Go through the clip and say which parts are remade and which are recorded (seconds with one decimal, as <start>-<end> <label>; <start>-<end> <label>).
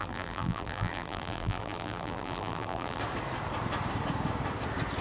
0.0-3.0 remade; 3.0-5.0 recorded